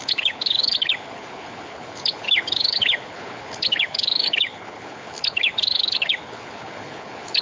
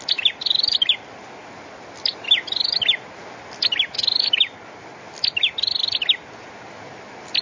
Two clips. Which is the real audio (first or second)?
second